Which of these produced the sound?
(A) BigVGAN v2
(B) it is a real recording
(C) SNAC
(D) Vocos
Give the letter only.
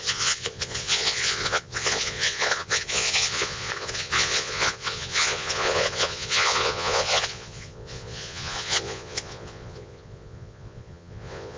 D